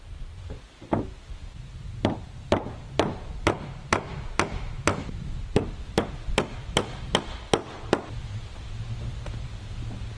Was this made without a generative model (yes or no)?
yes